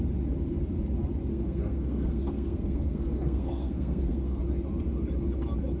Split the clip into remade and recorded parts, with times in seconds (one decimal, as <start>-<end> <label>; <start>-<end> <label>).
0.0-1.3 recorded; 1.3-4.4 remade; 4.4-5.8 recorded